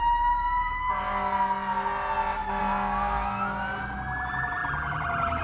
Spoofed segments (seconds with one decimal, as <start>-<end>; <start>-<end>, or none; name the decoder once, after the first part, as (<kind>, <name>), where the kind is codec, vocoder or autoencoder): none